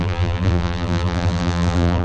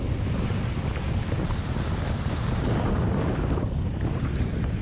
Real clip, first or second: second